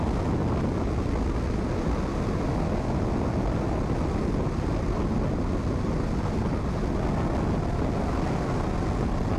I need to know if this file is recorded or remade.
recorded